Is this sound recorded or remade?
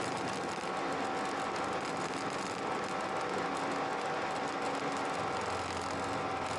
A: recorded